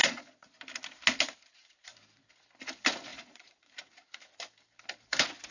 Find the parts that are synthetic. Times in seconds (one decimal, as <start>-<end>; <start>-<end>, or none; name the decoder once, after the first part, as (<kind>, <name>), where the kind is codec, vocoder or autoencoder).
0.0-0.6 (vocoder, Vocos); 3.1-3.7